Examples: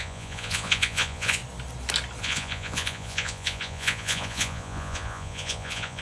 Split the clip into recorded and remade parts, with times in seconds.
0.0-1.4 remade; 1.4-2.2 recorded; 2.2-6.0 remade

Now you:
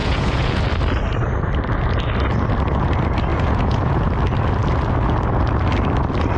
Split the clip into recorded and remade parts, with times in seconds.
0.0-0.6 remade; 0.6-3.3 recorded; 3.3-4.1 remade; 4.1-6.4 recorded

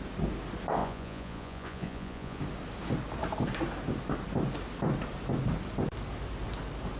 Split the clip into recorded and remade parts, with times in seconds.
0.0-0.8 recorded; 0.8-2.4 remade; 2.4-7.0 recorded

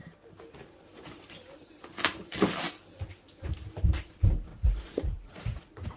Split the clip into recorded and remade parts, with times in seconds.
0.0-4.5 recorded; 4.5-6.0 remade